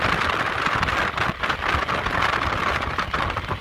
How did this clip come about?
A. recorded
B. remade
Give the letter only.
A